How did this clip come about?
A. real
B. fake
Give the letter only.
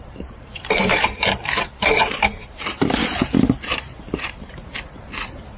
B